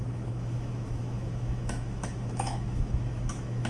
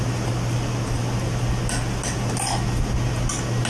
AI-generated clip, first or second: first